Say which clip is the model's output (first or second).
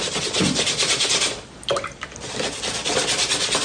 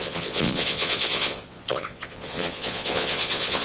second